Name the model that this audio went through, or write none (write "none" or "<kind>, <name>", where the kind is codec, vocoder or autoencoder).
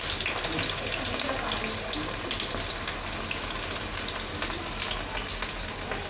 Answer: none